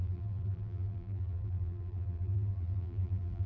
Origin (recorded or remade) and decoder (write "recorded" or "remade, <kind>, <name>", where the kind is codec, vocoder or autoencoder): remade, vocoder, BigVGAN v2